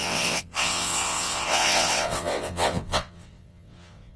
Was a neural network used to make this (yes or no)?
yes